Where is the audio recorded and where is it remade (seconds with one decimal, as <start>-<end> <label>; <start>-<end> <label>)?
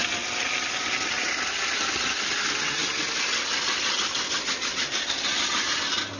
0.0-6.2 recorded